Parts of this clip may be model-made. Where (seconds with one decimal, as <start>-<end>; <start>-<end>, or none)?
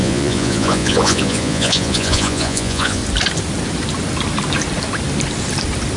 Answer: 0.0-3.0